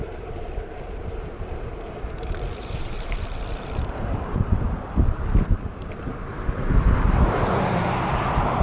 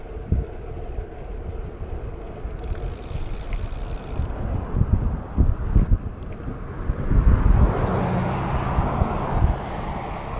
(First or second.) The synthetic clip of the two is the first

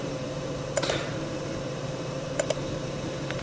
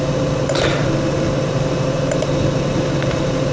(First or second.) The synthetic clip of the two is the first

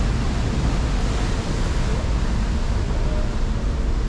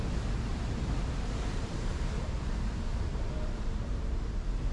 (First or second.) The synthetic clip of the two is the second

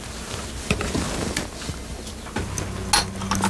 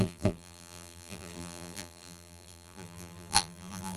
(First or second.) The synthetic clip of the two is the second